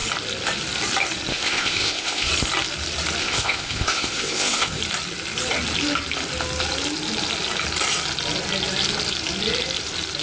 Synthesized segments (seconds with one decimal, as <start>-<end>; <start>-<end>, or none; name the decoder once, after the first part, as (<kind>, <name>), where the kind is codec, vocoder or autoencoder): 1.3-2.3 (codec, ZipCodec); 3.2-4.8